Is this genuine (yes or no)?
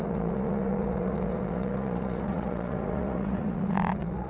no